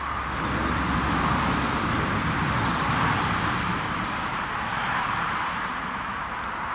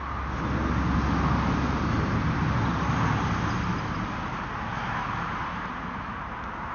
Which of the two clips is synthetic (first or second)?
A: first